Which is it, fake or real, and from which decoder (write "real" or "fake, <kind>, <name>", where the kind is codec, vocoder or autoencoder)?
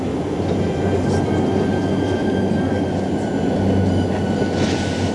real